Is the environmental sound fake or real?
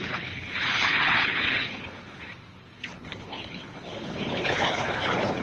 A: fake